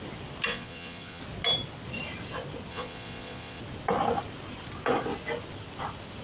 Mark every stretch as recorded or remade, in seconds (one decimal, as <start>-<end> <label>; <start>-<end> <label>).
0.0-0.5 recorded; 0.5-1.2 remade; 1.2-2.7 recorded; 2.7-3.6 remade; 3.6-6.2 recorded